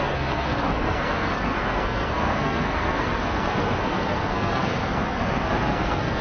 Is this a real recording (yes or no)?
no